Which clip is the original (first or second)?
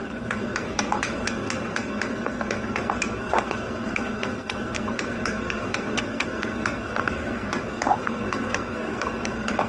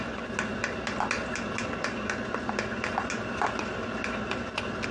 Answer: second